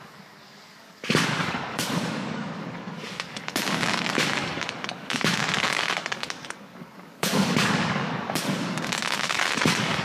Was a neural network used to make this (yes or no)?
yes